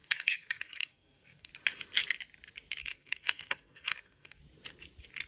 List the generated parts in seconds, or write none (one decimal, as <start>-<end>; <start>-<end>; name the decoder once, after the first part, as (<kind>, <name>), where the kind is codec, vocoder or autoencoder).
0.0-1.5 (codec, SNAC); 2.8-4.4